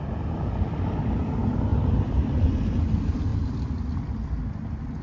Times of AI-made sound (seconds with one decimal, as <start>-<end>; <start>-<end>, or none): none